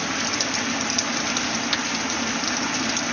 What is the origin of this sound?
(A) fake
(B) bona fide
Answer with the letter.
B